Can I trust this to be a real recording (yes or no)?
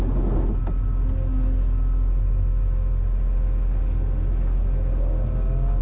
yes